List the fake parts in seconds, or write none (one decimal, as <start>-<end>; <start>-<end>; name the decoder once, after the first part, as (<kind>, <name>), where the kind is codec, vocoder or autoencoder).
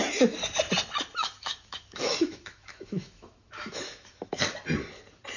1.2-4.4 (autoencoder, DAC-VAE)